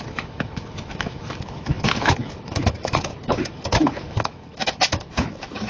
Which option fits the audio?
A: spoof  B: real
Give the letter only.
A